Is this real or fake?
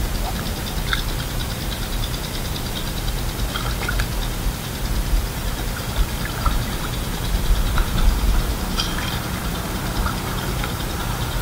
fake